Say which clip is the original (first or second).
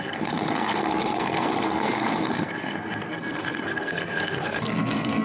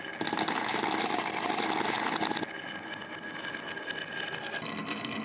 second